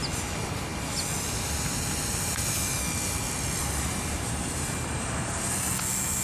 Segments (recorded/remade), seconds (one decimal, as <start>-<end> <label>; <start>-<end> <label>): 0.0-3.6 recorded; 3.6-5.5 remade; 5.5-6.2 recorded